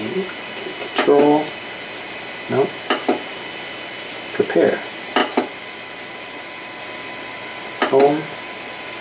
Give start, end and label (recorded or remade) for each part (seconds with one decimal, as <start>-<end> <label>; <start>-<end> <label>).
0.0-9.0 recorded